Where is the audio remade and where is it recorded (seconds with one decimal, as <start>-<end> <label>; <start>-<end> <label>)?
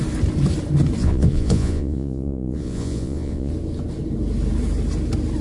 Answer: 0.0-1.0 recorded; 1.0-3.5 remade; 3.5-5.4 recorded